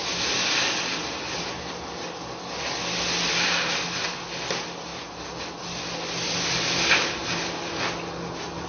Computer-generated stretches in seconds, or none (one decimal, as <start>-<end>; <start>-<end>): none